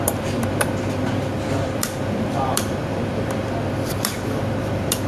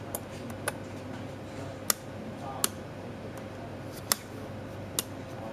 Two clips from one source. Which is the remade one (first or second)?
first